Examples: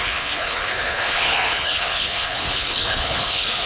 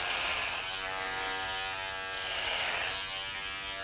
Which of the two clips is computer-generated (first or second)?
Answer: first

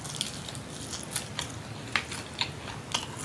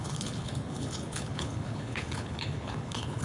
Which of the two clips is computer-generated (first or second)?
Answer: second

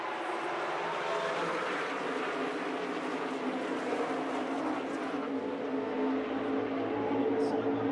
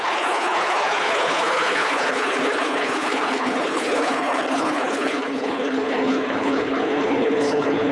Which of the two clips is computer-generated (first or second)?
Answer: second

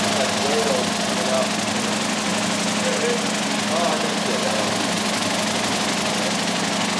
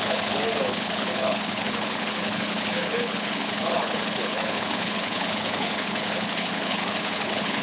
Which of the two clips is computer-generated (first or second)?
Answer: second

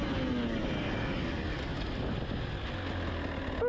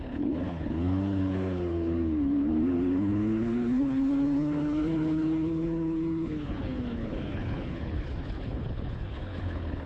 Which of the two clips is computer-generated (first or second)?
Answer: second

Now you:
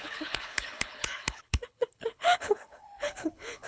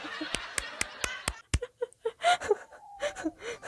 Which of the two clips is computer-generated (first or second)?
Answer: first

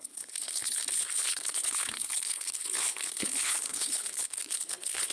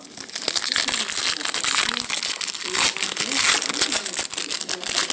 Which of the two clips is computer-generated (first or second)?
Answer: first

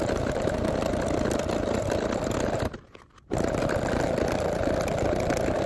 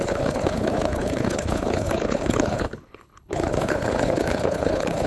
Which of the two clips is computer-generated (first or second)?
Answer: second